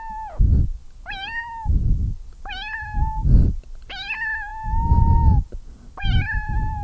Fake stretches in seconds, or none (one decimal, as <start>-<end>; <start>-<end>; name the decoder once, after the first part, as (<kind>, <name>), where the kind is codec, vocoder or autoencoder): none